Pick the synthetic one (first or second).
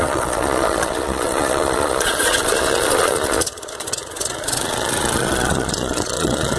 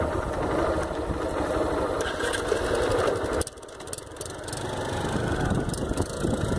first